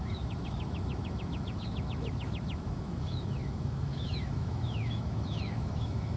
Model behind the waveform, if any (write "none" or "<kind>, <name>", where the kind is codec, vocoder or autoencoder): autoencoder, DAC-VAE